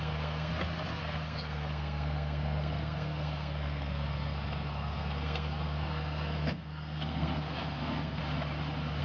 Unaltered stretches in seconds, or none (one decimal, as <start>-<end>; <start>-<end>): 0.5-1.0; 8.2-9.0

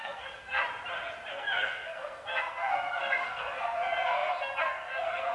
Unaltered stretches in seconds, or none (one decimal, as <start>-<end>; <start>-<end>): 0.6-1.3

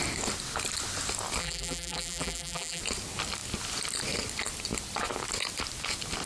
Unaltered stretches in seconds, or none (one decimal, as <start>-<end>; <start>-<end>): 0.0-1.4; 2.8-6.3